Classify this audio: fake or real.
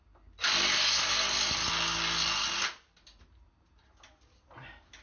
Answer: real